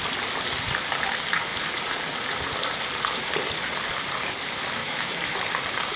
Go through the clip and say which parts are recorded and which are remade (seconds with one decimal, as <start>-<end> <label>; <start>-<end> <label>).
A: 0.0-4.8 recorded; 4.8-5.4 remade; 5.4-6.0 recorded